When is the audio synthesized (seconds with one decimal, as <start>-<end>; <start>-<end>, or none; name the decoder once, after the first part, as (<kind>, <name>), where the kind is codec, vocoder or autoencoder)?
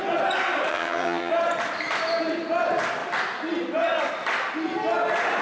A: 0.7-1.3 (vocoder, HiFi-GAN)